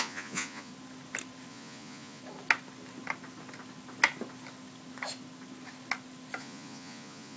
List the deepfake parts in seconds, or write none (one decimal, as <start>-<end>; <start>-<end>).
0.0-0.7; 1.5-2.2; 6.4-7.4